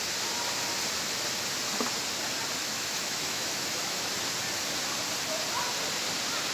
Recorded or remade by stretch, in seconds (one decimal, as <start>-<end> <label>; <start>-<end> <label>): 0.0-2.6 recorded; 2.6-4.1 remade; 4.1-6.5 recorded